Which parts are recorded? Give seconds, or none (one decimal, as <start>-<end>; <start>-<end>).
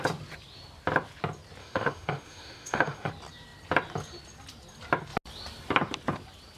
0.0-1.6; 3.1-6.6